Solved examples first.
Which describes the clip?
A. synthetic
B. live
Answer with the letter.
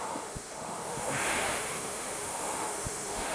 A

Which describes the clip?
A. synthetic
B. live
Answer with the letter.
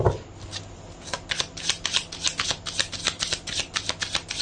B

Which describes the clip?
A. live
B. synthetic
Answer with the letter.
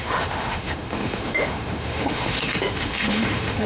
B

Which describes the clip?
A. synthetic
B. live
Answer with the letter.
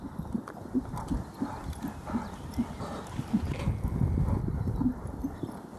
B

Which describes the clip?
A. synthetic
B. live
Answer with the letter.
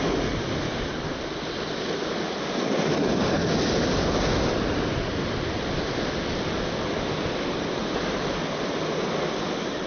B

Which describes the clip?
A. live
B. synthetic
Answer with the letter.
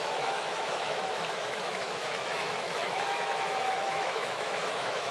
B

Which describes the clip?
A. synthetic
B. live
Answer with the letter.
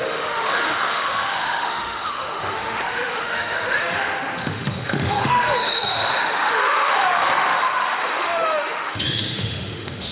A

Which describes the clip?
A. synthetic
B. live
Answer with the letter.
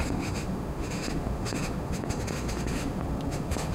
A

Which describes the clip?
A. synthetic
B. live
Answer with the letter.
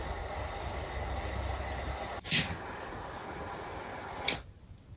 B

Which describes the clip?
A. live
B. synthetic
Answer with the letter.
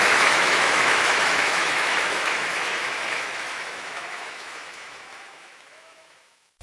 B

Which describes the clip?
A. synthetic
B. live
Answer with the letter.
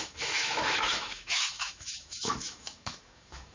A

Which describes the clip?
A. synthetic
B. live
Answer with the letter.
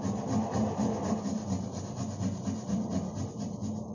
B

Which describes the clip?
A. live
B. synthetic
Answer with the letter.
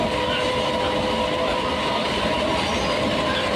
A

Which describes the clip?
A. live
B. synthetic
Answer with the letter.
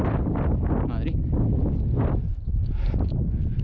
A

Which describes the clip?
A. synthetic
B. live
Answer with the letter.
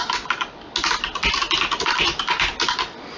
B